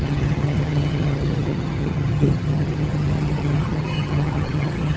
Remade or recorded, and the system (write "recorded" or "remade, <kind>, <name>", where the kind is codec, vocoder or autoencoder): remade, vocoder, HiFi-GAN